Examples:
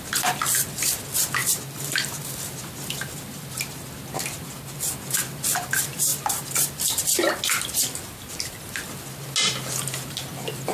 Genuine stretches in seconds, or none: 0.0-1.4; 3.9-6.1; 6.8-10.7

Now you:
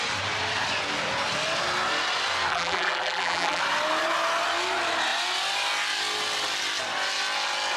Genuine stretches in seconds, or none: 0.0-2.5; 3.6-7.8